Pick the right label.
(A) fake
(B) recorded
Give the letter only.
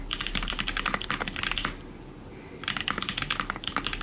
B